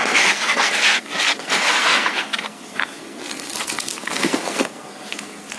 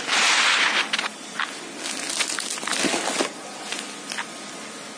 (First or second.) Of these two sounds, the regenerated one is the first